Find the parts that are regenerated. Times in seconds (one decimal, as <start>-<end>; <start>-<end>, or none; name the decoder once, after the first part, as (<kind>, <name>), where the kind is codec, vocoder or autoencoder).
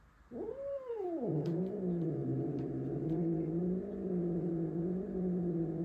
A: 0.5-1.6 (vocoder, BigVGAN v2)